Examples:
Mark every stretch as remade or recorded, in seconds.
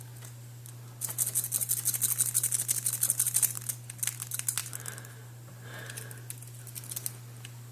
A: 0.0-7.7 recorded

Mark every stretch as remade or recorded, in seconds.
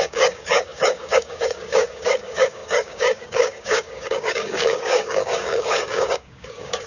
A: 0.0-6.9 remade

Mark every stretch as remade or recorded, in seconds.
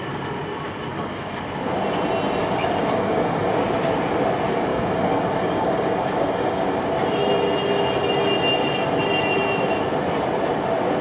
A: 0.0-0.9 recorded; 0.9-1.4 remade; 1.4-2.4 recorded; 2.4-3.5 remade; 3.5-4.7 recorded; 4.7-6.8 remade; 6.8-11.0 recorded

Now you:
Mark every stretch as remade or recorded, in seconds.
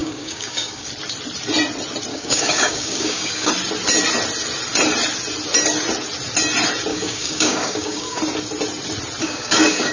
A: 0.0-0.9 remade; 0.9-2.1 recorded; 2.1-3.5 remade; 3.5-6.9 recorded; 6.9-8.2 remade; 8.2-9.2 recorded; 9.2-9.9 remade